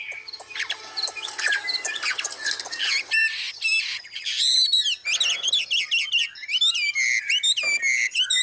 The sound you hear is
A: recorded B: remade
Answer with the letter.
A